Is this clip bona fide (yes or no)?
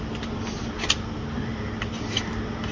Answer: yes